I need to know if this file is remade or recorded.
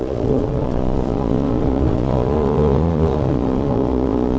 remade